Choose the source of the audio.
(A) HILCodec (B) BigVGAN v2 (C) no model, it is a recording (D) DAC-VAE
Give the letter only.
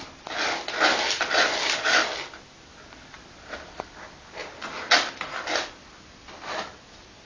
C